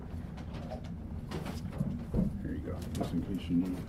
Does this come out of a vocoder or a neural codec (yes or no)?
no